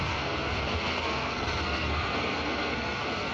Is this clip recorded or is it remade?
remade